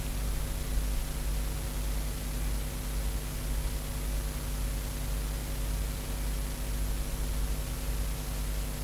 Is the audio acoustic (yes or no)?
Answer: yes